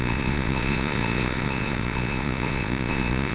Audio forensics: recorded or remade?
remade